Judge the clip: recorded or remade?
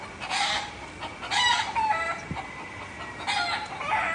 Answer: recorded